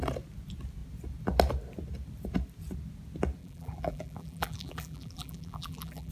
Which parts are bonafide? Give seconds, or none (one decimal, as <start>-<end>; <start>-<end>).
0.0-3.4